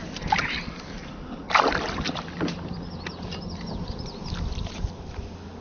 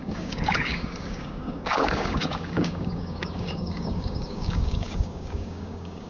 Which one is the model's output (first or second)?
second